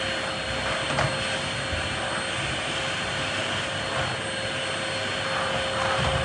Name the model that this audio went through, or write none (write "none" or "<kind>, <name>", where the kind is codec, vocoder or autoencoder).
none